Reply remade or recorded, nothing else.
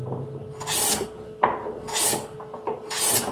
recorded